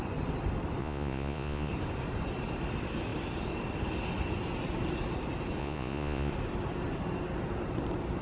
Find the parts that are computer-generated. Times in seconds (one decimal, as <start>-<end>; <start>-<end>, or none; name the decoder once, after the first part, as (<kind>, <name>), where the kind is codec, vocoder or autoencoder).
0.8-1.7 (vocoder, Vocos); 5.6-6.3